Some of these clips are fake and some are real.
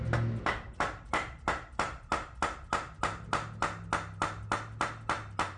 real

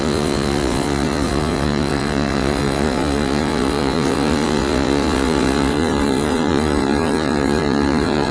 fake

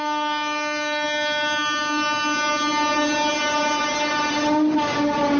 real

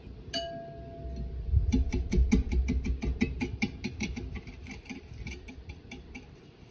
real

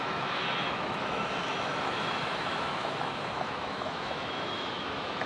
fake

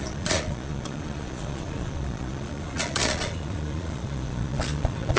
fake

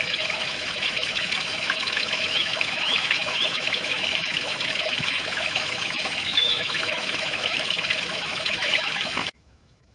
fake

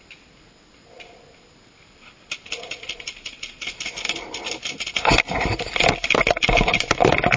real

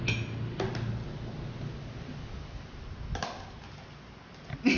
real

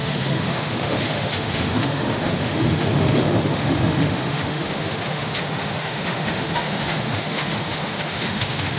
fake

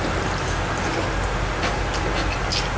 real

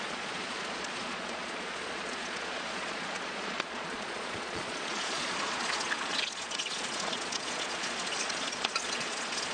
fake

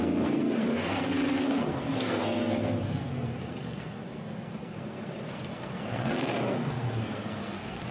fake